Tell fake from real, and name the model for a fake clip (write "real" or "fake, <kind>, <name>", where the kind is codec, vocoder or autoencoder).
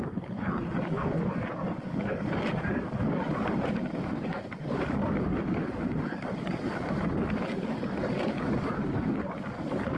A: fake, codec, DAC